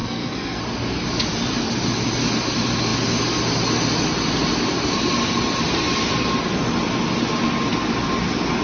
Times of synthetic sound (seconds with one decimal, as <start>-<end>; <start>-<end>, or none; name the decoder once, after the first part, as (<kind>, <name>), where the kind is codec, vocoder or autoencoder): 0.0-0.6 (codec, SNAC)